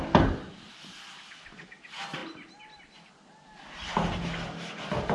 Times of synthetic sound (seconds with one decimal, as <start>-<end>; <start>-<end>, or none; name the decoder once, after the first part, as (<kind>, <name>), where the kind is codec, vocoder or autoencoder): none